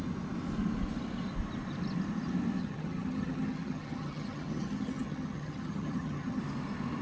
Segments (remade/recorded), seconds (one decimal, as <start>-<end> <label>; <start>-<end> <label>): 0.0-2.6 recorded; 2.6-6.4 remade; 6.4-7.0 recorded